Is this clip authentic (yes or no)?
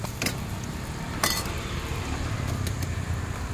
no